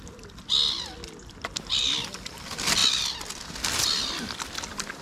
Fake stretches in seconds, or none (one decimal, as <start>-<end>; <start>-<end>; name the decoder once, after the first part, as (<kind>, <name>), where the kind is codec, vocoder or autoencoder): none

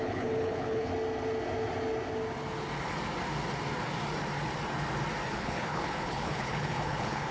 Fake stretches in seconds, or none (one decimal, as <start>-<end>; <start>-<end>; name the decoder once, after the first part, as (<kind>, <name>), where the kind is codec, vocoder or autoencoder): 0.0-0.9 (codec, HILCodec); 5.3-7.3

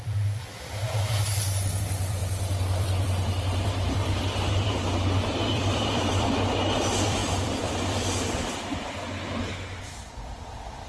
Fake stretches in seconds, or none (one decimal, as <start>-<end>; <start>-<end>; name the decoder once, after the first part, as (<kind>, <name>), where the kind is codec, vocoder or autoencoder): 0.0-0.4 (vocoder, BigVGAN v2); 1.8-10.9

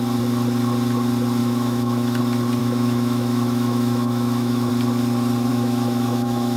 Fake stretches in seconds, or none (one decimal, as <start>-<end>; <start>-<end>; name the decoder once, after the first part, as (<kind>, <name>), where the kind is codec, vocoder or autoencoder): 1.4-2.2 (autoencoder, DAC-VAE); 2.6-4.7; 5.5-6.6